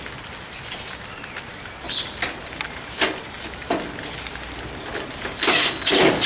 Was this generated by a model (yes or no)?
no